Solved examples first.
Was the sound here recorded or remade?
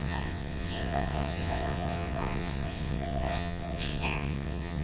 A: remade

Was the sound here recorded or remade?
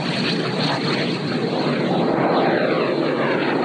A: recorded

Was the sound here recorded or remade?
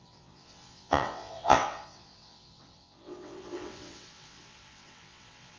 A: remade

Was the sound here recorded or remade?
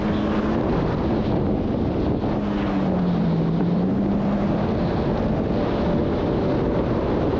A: recorded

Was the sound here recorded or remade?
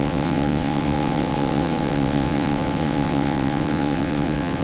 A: remade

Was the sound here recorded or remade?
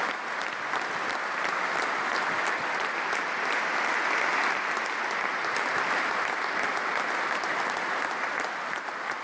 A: recorded